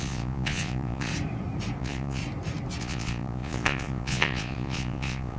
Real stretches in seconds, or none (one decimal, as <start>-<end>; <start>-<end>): 1.1-1.8; 2.2-2.8